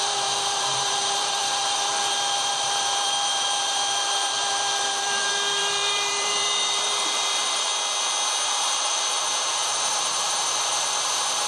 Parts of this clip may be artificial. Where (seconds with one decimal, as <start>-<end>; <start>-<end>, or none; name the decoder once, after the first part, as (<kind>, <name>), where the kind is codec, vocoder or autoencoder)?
0.0-7.7 (vocoder, BigVGAN v2); 8.4-11.5